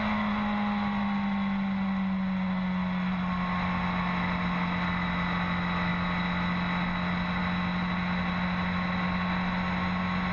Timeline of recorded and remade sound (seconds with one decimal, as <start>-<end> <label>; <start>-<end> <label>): 0.0-10.3 recorded